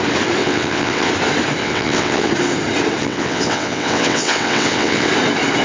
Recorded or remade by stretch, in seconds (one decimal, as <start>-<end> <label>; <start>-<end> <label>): 0.0-0.4 recorded; 0.4-1.1 remade; 1.1-1.6 recorded; 1.6-2.3 remade; 2.3-3.0 recorded; 3.0-5.1 remade; 5.1-5.6 recorded